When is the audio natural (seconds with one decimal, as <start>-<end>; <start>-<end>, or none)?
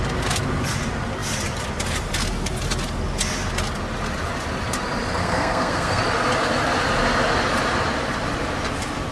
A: 0.0-5.2; 6.0-9.1